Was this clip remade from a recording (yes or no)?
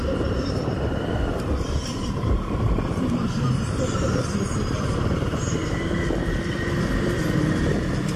yes